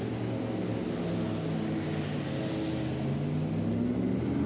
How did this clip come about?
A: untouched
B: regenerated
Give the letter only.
A